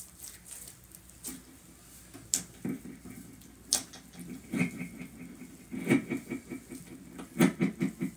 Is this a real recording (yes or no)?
yes